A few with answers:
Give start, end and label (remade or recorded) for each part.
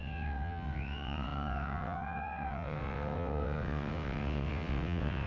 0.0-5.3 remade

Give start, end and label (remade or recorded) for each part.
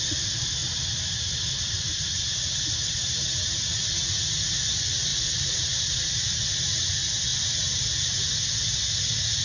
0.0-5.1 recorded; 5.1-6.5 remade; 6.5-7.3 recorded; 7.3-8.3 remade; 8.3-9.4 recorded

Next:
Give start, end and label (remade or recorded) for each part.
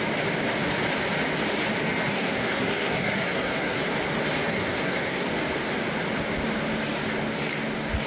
0.0-2.1 recorded; 2.1-3.8 remade; 3.8-4.5 recorded; 4.5-5.3 remade; 5.3-8.1 recorded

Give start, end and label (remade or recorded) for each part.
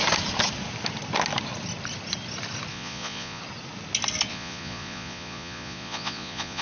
0.0-2.7 recorded; 2.7-3.4 remade; 3.4-4.3 recorded; 4.3-6.6 remade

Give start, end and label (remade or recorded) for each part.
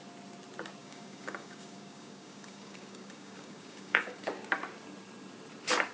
0.0-0.8 recorded; 0.8-4.3 remade; 4.3-5.9 recorded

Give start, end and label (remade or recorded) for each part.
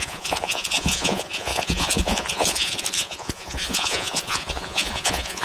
0.0-5.4 remade